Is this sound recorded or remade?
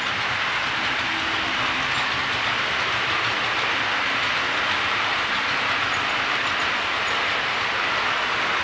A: recorded